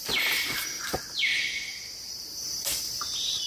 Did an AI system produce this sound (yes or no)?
yes